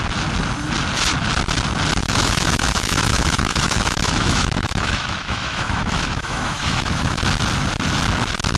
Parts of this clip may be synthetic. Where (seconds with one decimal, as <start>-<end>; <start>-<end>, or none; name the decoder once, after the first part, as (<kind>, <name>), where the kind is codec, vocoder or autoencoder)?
2.0-7.2 (autoencoder, DAC-VAE)